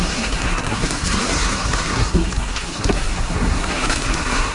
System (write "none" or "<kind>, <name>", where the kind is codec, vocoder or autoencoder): codec, SNAC